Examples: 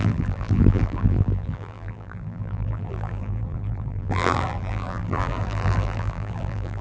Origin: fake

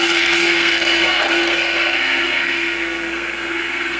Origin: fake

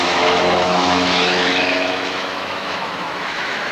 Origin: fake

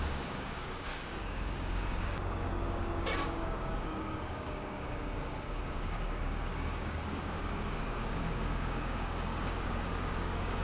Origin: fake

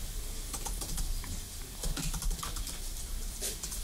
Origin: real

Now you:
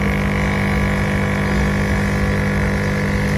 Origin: real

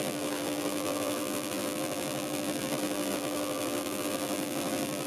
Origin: fake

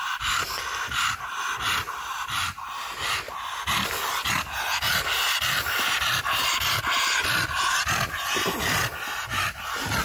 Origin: real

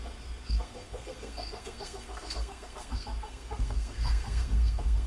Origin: fake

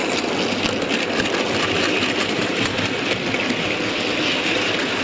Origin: real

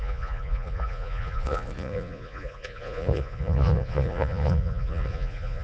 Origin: fake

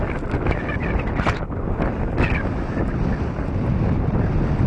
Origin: real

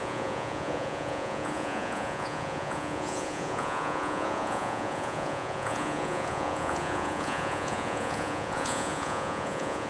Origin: fake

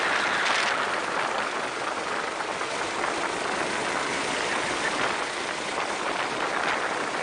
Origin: real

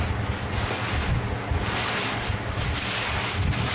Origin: real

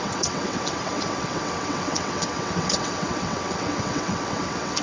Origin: fake